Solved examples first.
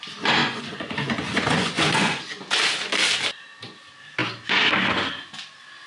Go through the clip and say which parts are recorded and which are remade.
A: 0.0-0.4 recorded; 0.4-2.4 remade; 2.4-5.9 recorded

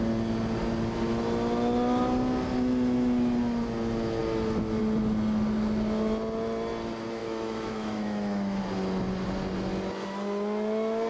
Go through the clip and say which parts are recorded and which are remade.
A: 0.0-7.2 recorded; 7.2-8.6 remade; 8.6-11.1 recorded

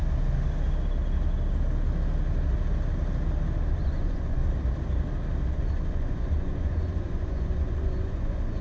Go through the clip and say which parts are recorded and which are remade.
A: 0.0-3.7 recorded; 3.7-4.4 remade; 4.4-5.5 recorded; 5.5-8.6 remade

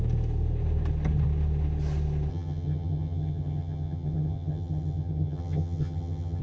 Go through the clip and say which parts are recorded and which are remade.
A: 0.0-2.3 recorded; 2.3-6.4 remade

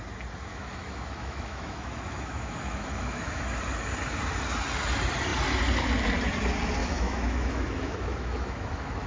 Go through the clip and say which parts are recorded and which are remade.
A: 0.0-0.5 recorded; 0.5-3.4 remade; 3.4-6.8 recorded; 6.8-9.1 remade

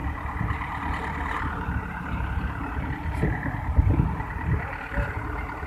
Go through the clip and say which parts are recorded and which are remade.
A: 0.0-5.7 recorded